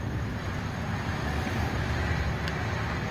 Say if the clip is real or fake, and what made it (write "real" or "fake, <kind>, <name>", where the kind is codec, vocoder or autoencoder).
fake, vocoder, BigVGAN v2